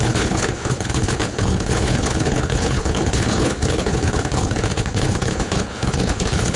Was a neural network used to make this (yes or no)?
yes